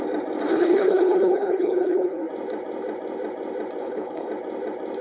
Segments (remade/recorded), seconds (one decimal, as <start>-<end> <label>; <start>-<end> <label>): 0.0-0.5 recorded; 0.5-2.2 remade; 2.2-3.8 recorded; 3.8-4.3 remade; 4.3-5.0 recorded